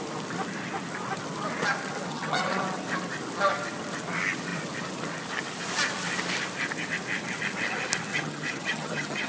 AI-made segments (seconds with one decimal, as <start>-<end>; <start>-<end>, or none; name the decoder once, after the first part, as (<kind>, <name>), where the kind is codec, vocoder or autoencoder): 2.1-2.6 (vocoder, HiFi-GAN); 8.1-9.3